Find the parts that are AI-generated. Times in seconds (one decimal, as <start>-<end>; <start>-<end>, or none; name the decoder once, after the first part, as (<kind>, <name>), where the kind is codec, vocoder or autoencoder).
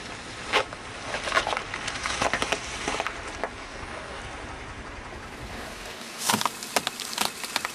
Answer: 3.6-4.2 (codec, DAC); 5.5-6.4